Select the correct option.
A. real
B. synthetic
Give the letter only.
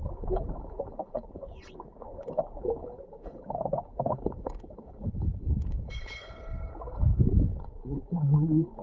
B